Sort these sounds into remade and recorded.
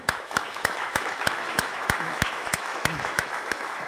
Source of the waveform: remade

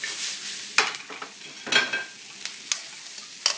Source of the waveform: recorded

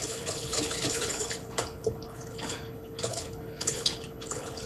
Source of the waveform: remade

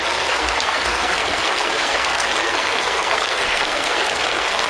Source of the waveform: remade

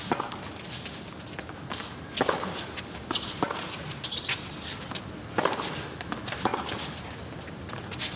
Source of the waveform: recorded